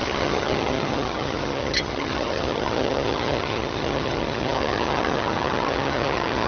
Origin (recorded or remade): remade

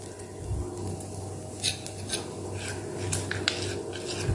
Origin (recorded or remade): recorded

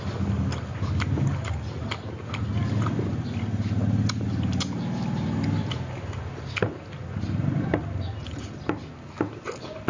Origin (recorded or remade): recorded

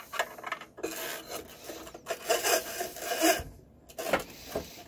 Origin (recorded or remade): recorded